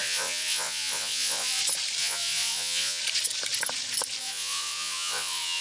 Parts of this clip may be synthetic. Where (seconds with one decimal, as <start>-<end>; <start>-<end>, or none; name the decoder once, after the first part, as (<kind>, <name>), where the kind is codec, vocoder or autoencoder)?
0.0-1.6 (vocoder, Vocos); 2.0-3.0; 4.2-5.6